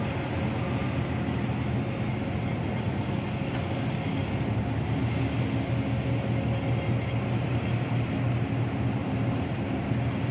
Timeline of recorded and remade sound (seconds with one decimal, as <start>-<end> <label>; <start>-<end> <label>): 0.0-9.0 recorded; 9.0-9.8 remade; 9.8-10.3 recorded